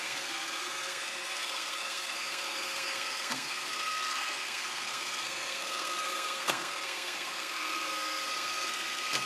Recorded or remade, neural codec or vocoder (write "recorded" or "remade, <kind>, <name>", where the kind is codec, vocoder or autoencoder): remade, codec, SNAC